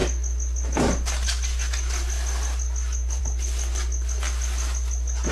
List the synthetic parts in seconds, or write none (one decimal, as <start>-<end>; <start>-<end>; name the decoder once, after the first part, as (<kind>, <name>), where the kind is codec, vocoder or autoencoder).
none